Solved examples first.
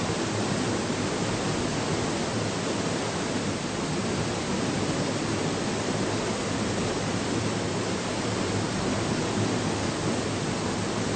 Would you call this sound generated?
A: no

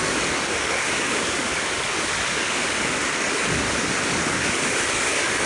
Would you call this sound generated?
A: yes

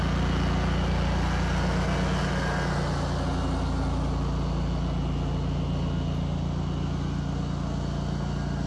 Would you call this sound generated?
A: no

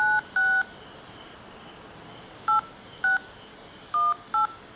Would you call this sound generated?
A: no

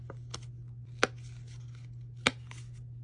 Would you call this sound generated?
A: no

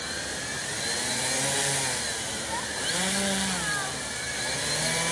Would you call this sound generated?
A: no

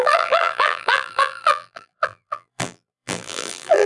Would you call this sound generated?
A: yes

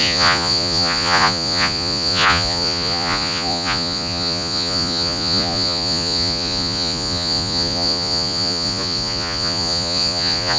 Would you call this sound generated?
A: yes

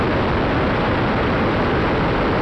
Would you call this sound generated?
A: no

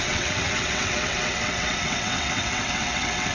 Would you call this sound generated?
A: yes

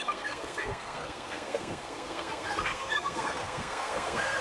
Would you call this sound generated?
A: yes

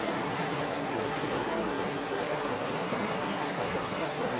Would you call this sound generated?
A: yes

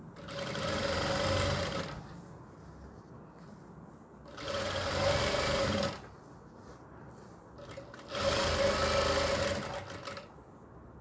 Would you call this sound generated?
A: no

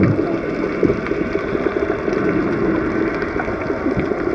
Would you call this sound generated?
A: no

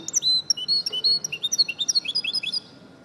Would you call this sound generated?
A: no